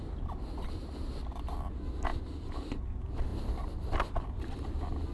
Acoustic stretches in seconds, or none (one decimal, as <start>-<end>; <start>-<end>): 1.2-2.1; 2.7-3.3; 4.0-5.1